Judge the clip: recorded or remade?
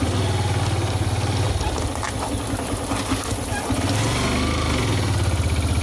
recorded